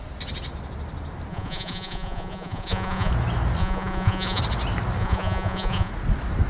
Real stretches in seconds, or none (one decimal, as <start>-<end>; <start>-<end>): 0.0-1.3; 3.1-3.6; 4.4-5.0; 5.9-6.5